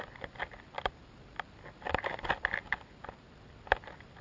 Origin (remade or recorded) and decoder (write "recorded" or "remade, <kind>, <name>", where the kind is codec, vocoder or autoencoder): recorded